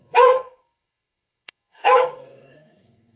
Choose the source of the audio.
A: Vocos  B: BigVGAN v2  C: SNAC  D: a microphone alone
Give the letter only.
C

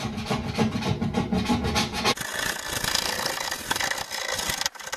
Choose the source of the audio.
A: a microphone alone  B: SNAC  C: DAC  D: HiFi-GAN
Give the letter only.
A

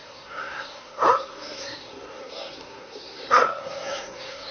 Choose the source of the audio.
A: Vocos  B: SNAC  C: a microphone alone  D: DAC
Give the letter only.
B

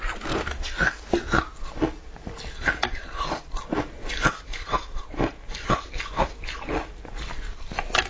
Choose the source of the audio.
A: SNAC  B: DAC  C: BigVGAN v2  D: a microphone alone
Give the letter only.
D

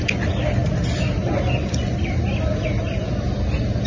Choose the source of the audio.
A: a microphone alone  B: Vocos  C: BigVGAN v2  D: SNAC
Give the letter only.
A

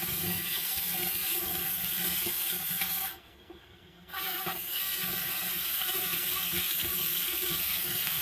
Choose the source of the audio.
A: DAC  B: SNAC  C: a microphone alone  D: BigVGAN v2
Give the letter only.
B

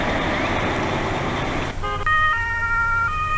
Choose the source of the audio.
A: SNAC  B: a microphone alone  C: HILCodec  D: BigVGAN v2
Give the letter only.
B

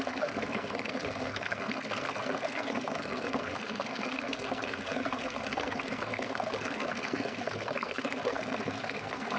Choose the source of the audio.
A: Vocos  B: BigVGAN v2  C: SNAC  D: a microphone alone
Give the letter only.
C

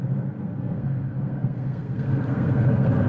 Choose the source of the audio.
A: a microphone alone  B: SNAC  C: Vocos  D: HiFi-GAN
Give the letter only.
B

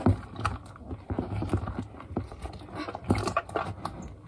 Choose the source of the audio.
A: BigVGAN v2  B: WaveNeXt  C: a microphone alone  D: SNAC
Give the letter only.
C